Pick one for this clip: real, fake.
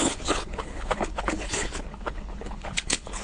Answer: fake